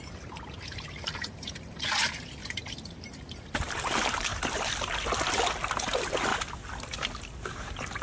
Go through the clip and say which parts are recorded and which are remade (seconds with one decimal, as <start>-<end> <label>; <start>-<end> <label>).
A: 0.0-4.3 remade; 4.3-5.7 recorded; 5.7-6.3 remade; 6.3-7.5 recorded; 7.5-8.0 remade